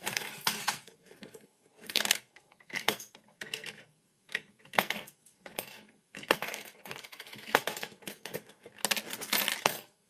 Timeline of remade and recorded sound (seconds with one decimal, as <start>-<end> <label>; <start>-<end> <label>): 0.0-8.8 remade; 8.8-9.6 recorded; 9.6-10.1 remade